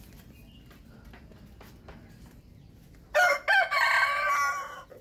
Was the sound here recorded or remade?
recorded